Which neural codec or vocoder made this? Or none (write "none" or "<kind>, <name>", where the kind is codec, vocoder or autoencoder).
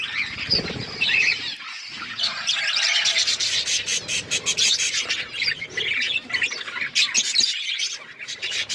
none